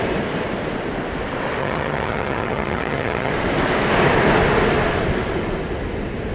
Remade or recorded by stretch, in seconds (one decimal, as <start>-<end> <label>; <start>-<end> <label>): 0.0-1.6 recorded; 1.6-3.3 remade; 3.3-6.3 recorded

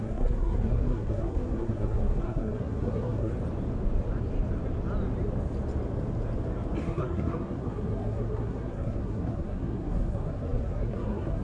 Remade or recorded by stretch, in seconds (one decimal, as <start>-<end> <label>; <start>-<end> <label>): 0.0-3.3 remade; 3.3-6.8 recorded; 6.8-11.4 remade

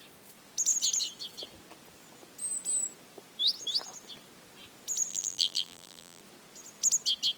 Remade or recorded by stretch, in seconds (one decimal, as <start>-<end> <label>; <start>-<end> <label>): 0.0-5.1 recorded; 5.1-6.2 remade; 6.2-7.4 recorded

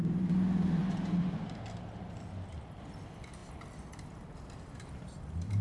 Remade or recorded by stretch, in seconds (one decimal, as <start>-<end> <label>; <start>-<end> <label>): 0.0-0.8 recorded; 0.8-1.4 remade; 1.4-5.6 recorded

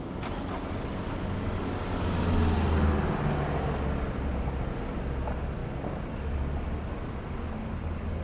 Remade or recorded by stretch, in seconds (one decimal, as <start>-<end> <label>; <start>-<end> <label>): 0.0-8.2 recorded

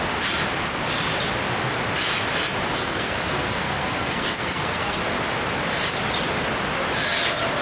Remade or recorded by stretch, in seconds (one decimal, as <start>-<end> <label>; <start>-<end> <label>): 0.0-2.7 recorded; 2.7-5.0 remade; 5.0-7.6 recorded